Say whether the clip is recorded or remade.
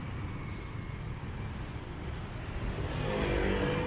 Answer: recorded